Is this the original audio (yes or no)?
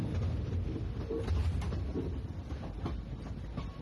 yes